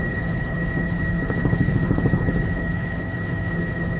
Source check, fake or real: fake